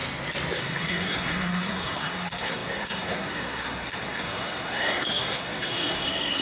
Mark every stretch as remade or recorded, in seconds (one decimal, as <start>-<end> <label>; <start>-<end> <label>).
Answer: 0.0-0.6 recorded; 0.6-6.4 remade